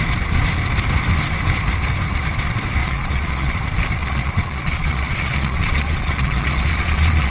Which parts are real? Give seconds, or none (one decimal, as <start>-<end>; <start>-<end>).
0.0-2.8; 3.6-4.0